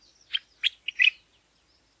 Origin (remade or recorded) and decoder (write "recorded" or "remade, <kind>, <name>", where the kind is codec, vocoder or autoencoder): recorded